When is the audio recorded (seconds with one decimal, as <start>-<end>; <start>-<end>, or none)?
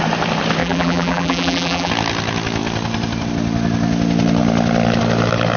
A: 0.0-0.6; 1.9-5.6